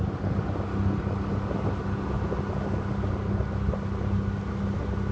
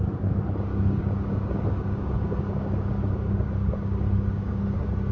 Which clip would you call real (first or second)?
first